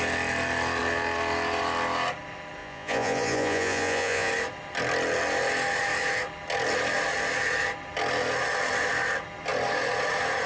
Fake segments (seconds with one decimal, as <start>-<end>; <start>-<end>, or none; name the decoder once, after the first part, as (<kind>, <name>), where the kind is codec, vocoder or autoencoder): 2.6-4.3 (vocoder, Vocos)